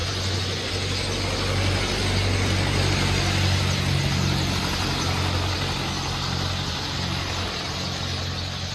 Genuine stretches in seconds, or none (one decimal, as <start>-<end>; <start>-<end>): 0.7-8.7